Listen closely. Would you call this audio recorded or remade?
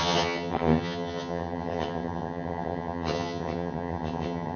remade